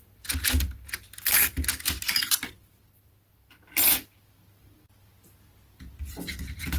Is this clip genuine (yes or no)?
yes